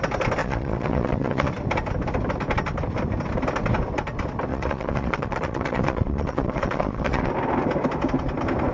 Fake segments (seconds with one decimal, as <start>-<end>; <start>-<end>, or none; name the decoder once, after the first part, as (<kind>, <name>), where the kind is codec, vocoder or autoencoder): 0.4-1.5 (vocoder, WaveNeXt); 4.5-7.3